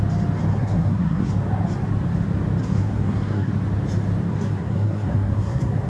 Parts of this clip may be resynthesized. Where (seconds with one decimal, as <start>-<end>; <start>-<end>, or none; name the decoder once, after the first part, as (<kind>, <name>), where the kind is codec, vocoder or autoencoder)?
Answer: 0.5-1.3 (codec, SNAC); 2.6-3.5; 4.3-5.9